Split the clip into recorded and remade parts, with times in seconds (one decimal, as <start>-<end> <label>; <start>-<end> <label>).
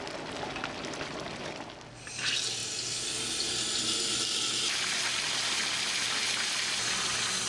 0.0-7.5 recorded